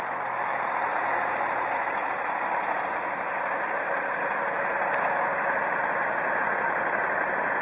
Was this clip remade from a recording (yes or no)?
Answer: no